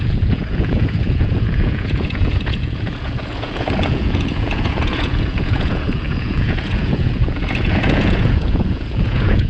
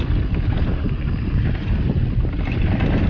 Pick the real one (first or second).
second